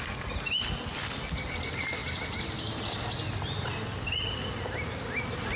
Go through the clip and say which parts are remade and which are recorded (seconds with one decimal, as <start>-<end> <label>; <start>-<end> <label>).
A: 0.0-5.6 recorded